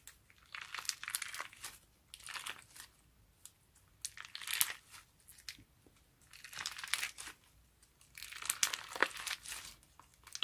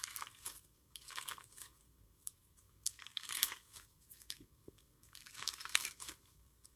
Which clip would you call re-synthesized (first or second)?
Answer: second